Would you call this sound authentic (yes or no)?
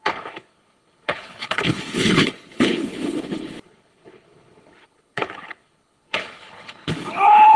no